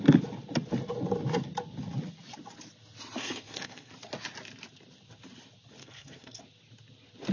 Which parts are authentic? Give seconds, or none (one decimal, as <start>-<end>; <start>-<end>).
0.0-3.2; 3.9-5.8; 6.4-7.3